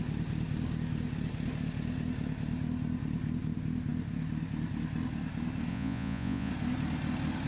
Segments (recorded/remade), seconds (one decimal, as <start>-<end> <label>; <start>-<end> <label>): 0.0-5.7 recorded; 5.7-6.5 remade; 6.5-7.5 recorded